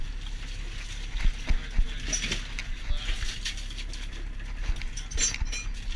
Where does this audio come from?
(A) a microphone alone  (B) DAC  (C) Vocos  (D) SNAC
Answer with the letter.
A